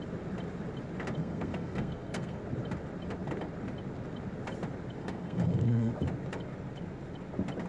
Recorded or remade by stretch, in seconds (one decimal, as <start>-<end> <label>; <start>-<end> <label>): 0.0-1.2 recorded; 1.2-2.4 remade; 2.4-5.0 recorded; 5.0-5.9 remade; 5.9-7.7 recorded